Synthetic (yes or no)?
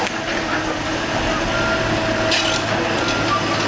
no